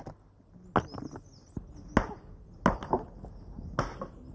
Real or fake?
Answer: real